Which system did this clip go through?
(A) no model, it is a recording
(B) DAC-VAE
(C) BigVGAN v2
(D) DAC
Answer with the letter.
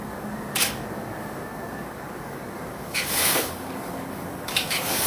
D